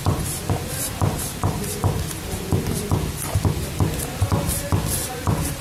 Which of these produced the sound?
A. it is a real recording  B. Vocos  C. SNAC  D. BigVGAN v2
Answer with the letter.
A